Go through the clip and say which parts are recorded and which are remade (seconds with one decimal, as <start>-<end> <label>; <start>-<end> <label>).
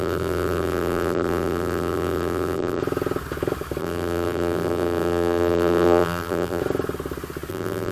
0.0-2.8 remade; 2.8-3.8 recorded; 3.8-6.6 remade; 6.6-7.5 recorded; 7.5-7.9 remade